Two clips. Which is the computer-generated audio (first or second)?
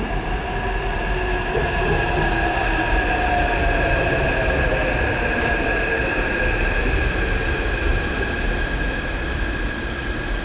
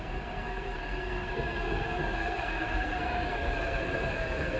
second